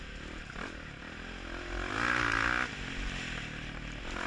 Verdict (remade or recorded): recorded